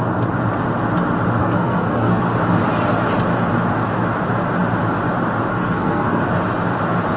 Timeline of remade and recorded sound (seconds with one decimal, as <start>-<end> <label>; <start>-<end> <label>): 0.0-1.4 recorded; 1.4-2.2 remade; 2.2-5.5 recorded; 5.5-6.3 remade; 6.3-7.2 recorded